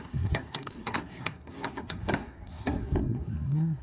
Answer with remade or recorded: remade